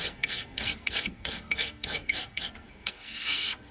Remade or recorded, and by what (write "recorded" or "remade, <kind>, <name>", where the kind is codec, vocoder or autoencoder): remade, codec, SNAC